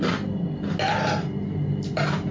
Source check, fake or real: real